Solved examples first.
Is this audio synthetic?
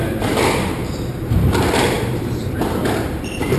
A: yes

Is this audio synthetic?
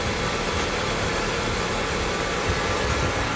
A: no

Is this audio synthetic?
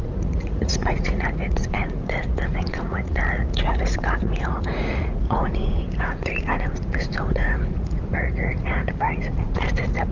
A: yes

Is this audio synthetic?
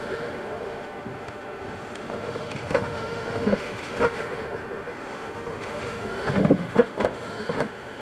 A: yes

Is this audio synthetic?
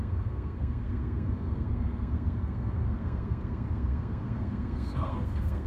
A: yes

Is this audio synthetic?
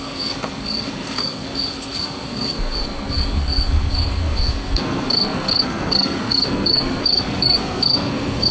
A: yes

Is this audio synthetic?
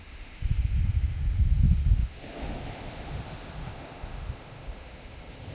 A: yes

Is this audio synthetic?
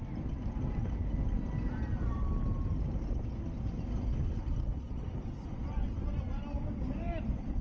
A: no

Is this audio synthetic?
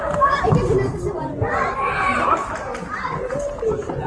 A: no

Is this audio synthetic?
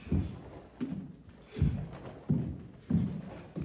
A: no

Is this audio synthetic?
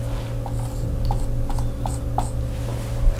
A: no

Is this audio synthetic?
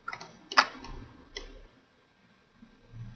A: no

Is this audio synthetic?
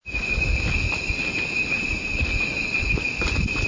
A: no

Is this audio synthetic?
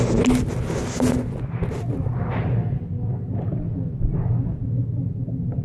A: no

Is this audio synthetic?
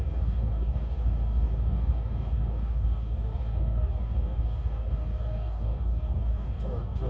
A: yes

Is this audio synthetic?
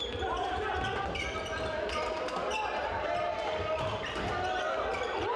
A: no